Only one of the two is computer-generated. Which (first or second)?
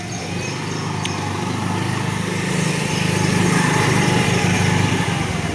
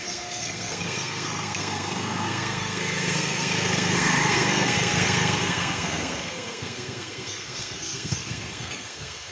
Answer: second